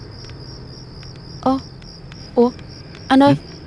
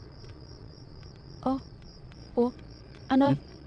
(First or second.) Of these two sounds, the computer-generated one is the second